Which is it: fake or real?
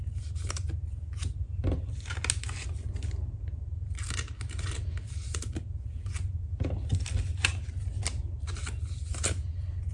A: real